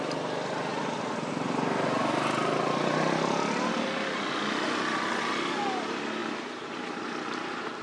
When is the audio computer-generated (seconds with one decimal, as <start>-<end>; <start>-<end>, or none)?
none